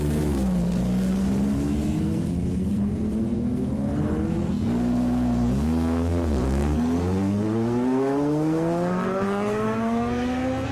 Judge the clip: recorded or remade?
remade